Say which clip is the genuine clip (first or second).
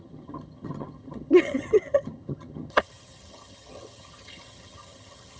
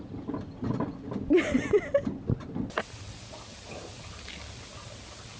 second